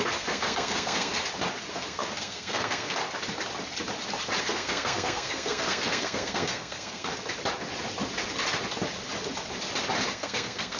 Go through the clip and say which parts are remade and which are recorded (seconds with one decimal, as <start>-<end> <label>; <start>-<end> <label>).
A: 0.0-1.2 remade; 1.2-1.7 recorded; 1.7-3.0 remade; 3.0-4.4 recorded; 4.4-7.1 remade; 7.1-10.1 recorded; 10.1-10.8 remade

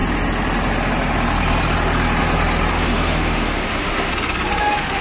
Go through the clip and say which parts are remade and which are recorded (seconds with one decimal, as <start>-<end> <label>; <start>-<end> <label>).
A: 0.0-2.7 recorded; 2.7-4.1 remade; 4.1-4.6 recorded; 4.6-5.0 remade

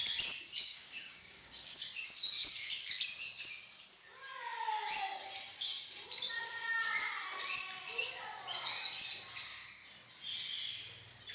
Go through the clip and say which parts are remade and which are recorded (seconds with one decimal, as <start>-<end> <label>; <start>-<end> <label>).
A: 0.0-0.7 recorded; 0.7-1.8 remade; 1.8-11.3 recorded

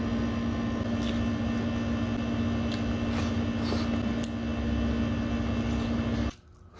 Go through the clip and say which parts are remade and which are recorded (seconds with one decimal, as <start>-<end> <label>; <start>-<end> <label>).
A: 0.0-6.8 recorded

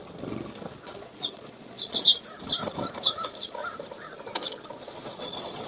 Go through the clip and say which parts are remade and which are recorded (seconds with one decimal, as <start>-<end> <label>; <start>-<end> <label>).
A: 0.0-0.8 recorded; 0.8-2.1 remade; 2.1-3.0 recorded; 3.0-3.6 remade; 3.6-4.8 recorded; 4.8-5.7 remade

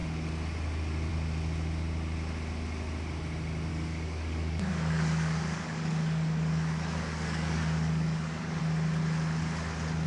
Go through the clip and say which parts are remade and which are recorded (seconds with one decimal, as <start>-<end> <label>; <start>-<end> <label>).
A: 0.0-3.7 recorded; 3.7-8.6 remade; 8.6-10.1 recorded

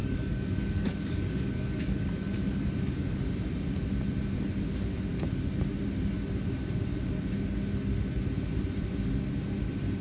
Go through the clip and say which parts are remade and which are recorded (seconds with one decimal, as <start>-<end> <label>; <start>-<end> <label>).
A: 0.0-3.2 remade; 3.2-10.0 recorded